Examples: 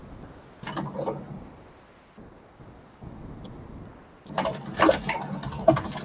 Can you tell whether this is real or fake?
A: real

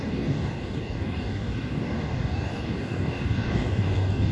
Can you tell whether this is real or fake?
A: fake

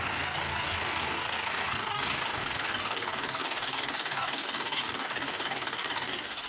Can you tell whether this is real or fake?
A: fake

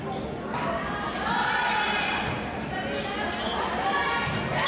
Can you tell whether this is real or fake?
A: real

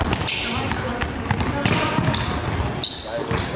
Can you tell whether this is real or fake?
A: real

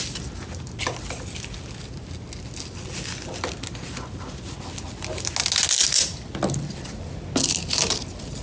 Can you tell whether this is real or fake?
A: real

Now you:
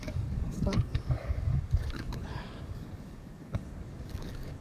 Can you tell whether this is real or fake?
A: fake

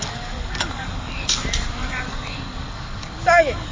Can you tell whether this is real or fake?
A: fake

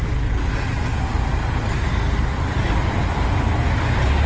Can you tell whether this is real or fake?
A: real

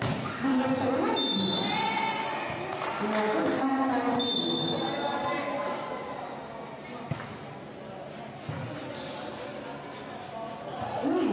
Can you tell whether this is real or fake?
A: real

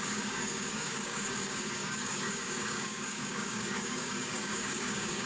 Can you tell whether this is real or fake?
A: fake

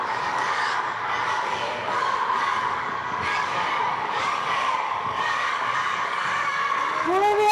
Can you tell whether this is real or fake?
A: fake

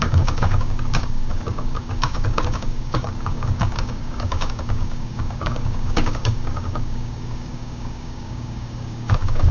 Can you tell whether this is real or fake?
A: fake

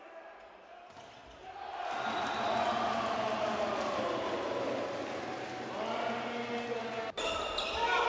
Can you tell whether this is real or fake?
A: real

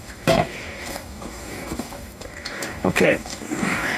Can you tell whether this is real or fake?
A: fake